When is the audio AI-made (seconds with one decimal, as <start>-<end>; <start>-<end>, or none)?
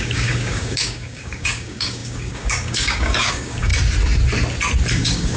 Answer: 0.0-3.7; 4.9-5.4